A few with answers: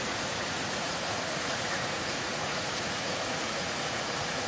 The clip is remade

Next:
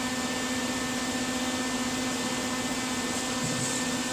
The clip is recorded